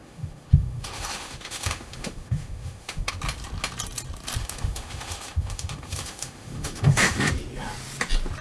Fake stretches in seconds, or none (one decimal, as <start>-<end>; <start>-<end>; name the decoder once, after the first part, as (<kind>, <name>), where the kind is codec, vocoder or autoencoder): 0.0-3.2 (autoencoder, DAC-VAE); 4.4-7.3